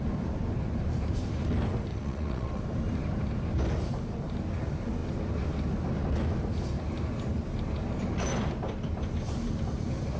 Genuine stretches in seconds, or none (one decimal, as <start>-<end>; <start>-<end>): 0.0-1.9; 2.6-10.2